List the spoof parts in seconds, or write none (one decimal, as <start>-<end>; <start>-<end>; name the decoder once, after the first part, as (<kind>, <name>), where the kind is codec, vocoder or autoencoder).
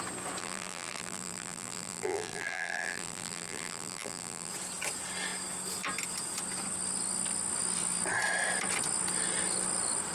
0.4-4.5 (vocoder, BigVGAN v2)